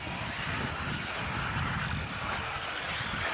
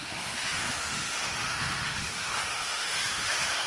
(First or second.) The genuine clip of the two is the first